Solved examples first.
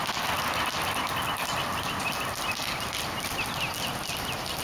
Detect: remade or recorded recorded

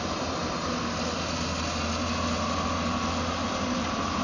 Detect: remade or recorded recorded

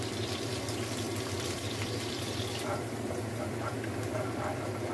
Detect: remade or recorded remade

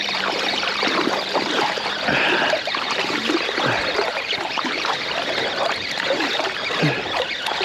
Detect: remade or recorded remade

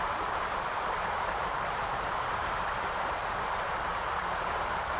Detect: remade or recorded remade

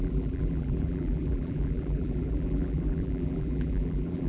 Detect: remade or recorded remade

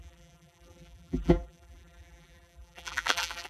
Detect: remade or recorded remade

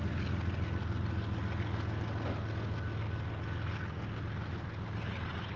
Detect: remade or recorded recorded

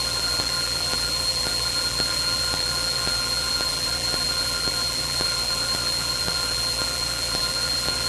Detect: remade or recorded remade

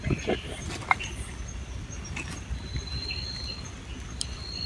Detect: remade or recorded recorded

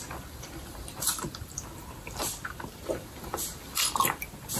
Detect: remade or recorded remade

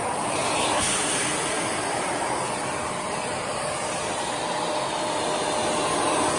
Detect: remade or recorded recorded